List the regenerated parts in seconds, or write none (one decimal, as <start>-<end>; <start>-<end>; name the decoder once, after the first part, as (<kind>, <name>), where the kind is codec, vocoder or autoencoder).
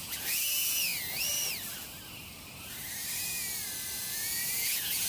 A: 0.0-0.9 (vocoder, Vocos); 4.0-5.1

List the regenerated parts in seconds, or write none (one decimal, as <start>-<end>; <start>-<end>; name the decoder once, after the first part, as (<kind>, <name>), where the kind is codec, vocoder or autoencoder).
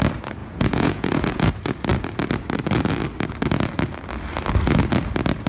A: 0.4-1.5 (vocoder, Vocos)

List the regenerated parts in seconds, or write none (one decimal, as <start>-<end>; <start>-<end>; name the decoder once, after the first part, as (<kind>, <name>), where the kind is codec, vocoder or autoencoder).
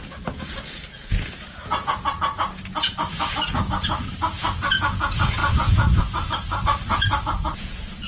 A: 0.0-8.1 (vocoder, Vocos)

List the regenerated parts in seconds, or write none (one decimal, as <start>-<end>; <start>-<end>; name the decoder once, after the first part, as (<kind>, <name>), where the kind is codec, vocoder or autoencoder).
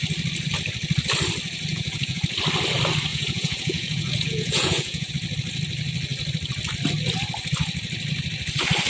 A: 1.7-2.2 (vocoder, Vocos); 3.1-5.1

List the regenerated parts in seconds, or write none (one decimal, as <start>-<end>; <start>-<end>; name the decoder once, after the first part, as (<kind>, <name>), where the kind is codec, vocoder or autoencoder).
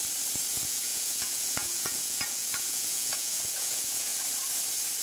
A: 0.5-4.1 (vocoder, Vocos)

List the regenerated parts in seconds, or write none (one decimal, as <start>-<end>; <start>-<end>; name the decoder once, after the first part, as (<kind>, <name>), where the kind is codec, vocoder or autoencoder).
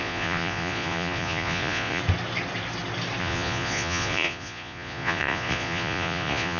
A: 0.0-2.0 (vocoder, Vocos); 3.2-6.6